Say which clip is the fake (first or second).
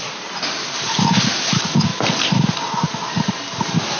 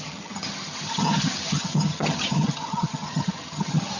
second